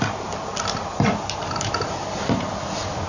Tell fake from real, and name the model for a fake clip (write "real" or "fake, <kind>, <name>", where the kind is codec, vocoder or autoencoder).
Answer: real